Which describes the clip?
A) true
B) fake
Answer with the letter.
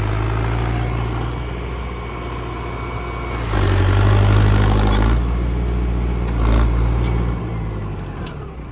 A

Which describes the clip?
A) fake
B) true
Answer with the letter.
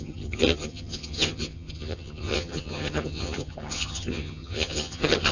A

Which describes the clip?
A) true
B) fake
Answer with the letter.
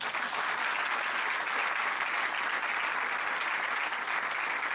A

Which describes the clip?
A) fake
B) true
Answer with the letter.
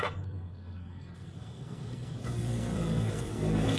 A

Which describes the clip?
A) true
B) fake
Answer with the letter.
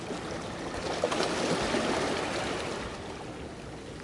A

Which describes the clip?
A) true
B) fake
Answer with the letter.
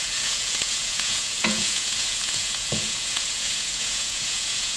B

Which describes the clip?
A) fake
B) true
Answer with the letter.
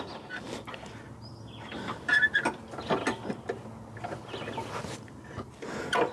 B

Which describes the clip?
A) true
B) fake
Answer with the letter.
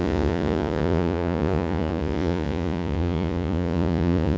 B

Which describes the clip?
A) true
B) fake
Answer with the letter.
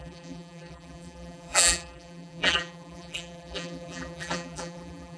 B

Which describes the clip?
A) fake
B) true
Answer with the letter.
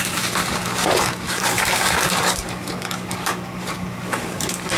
A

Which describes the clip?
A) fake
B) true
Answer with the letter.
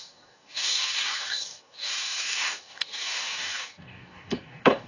A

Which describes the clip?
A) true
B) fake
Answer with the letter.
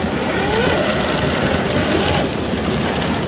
A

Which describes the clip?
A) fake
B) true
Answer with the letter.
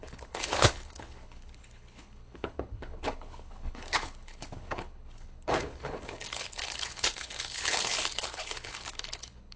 A